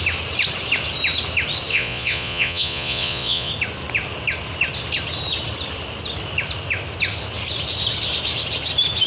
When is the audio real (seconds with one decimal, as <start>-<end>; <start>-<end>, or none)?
0.0-1.7; 3.5-9.1